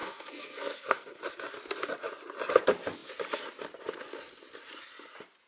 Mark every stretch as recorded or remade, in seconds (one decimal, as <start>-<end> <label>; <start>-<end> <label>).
0.0-1.2 remade; 1.2-5.5 recorded